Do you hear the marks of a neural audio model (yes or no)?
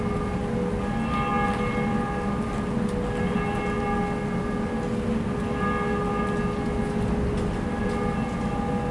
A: no